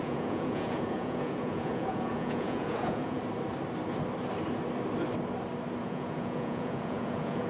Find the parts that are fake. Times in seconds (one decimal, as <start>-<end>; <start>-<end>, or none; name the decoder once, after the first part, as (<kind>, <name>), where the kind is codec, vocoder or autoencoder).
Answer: 0.0-3.2 (vocoder, Vocos); 5.8-7.5